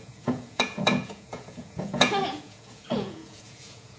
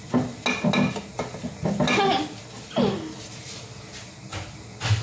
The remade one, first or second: first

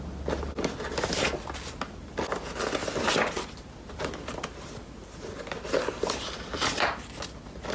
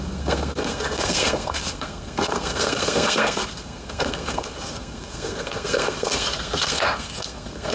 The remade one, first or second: second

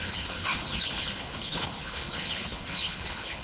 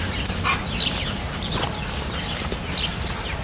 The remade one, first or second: first